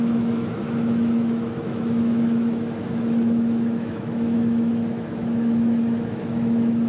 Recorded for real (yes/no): no